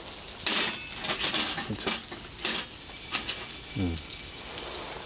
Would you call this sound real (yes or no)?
yes